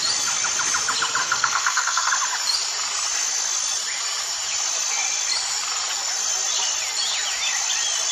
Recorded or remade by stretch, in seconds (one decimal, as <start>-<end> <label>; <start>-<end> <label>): 0.0-1.2 recorded; 1.2-2.1 remade; 2.1-8.1 recorded